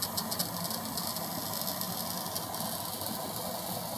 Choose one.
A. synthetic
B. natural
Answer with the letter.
B